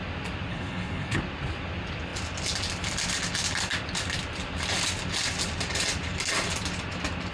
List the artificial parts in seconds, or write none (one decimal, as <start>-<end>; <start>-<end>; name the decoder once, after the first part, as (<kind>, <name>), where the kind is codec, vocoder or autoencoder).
0.5-1.2 (codec, HILCodec)